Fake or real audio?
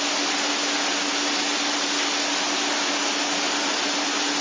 real